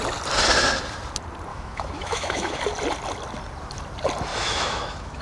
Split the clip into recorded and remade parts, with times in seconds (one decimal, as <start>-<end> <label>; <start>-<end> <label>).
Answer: 0.0-1.5 recorded; 1.5-2.6 remade; 2.6-4.3 recorded; 4.3-5.2 remade